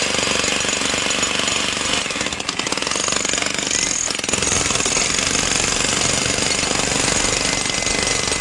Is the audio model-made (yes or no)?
no